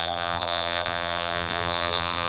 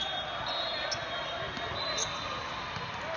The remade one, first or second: first